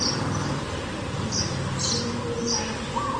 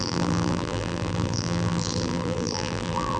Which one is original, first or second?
first